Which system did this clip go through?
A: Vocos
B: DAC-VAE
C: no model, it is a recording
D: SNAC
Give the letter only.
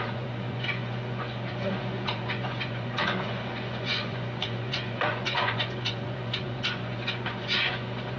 A